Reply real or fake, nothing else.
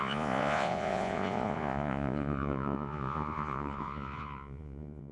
fake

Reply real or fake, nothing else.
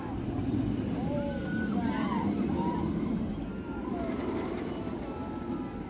real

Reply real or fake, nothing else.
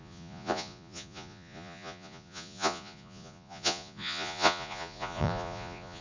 fake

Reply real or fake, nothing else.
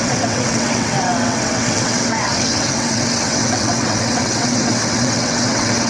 fake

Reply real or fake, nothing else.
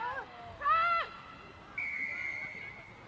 real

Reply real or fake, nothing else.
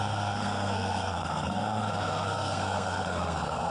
fake